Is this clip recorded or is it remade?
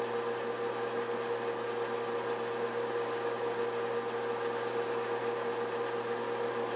recorded